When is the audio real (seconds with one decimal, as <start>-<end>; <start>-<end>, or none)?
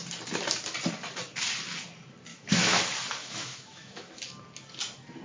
0.0-2.3; 2.8-3.2; 4.2-5.2